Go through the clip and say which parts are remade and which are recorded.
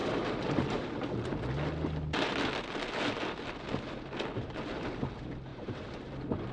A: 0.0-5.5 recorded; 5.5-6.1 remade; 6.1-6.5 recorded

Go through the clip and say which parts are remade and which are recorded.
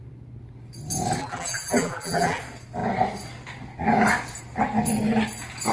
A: 0.0-1.2 recorded; 1.2-2.4 remade; 2.4-5.7 recorded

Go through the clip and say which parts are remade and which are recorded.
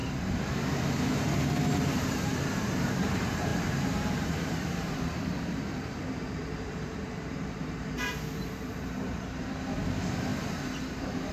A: 0.0-11.3 remade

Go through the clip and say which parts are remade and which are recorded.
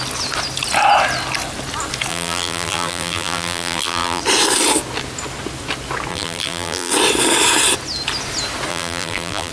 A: 0.0-2.1 recorded; 2.1-4.2 remade; 4.2-6.1 recorded; 6.1-6.9 remade; 6.9-8.7 recorded; 8.7-9.5 remade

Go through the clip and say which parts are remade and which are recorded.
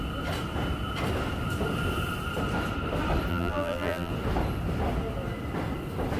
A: 0.0-3.3 recorded; 3.3-4.1 remade; 4.1-6.2 recorded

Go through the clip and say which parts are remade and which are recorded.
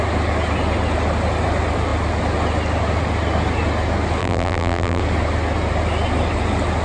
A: 0.0-4.2 recorded; 4.2-5.0 remade; 5.0-6.8 recorded